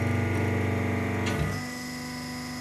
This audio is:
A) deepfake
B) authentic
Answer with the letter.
B